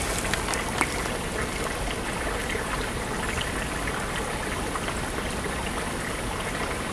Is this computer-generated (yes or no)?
no